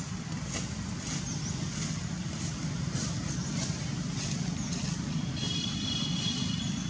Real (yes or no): yes